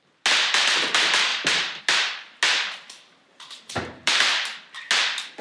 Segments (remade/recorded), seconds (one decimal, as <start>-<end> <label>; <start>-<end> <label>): 0.0-1.3 recorded; 1.3-1.8 remade; 1.8-3.3 recorded; 3.3-4.1 remade; 4.1-5.4 recorded